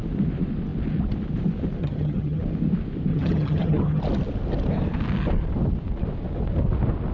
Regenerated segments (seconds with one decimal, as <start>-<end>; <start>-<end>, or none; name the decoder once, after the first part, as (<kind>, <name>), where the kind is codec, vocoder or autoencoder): 1.8-2.4 (vocoder, HiFi-GAN); 3.1-4.0